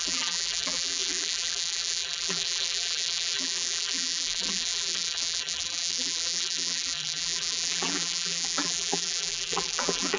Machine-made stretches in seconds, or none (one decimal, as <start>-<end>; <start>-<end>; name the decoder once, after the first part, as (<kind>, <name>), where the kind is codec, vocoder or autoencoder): 0.0-10.2 (vocoder, BigVGAN v2)